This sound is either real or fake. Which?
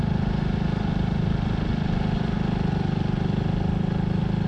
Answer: real